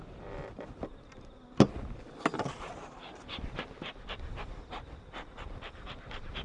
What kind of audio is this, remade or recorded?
recorded